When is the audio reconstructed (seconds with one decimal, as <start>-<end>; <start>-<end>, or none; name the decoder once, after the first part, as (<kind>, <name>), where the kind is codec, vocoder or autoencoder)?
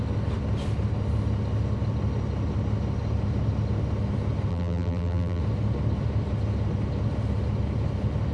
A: 4.5-5.4 (vocoder, BigVGAN v2)